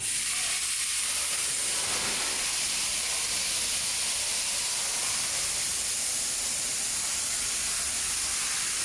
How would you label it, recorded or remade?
recorded